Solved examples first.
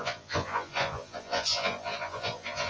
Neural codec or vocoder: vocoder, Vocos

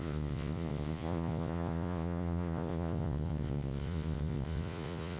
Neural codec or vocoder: vocoder, Vocos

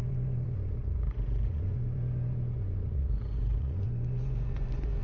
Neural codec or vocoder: vocoder, Vocos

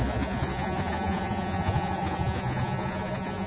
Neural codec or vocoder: vocoder, Vocos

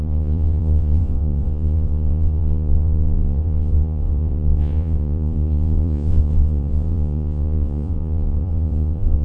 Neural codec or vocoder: vocoder, Vocos